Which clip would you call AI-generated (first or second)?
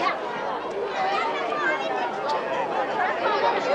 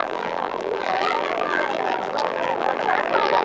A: second